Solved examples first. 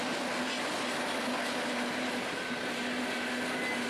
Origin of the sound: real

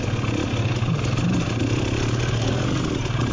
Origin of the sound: real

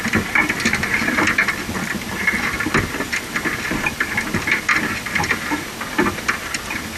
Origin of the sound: real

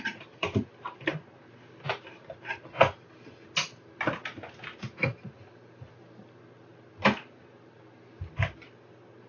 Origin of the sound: real